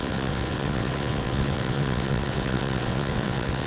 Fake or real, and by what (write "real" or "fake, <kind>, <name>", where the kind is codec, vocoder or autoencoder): fake, vocoder, WaveNeXt